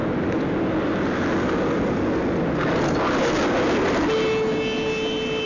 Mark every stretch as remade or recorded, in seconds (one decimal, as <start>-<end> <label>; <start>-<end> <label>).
0.0-5.5 recorded